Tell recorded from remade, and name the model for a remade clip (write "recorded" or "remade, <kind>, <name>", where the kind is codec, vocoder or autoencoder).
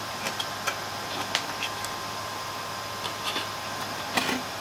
recorded